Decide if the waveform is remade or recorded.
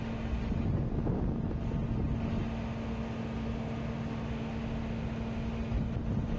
recorded